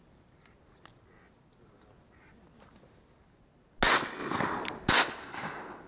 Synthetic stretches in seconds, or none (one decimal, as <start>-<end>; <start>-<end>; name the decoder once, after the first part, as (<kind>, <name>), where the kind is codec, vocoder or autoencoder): none